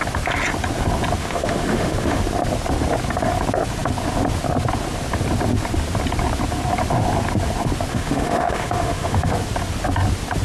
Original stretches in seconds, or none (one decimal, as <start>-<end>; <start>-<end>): 0.0-1.2; 2.2-7.9; 9.3-10.4